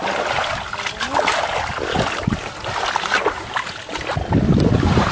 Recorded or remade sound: recorded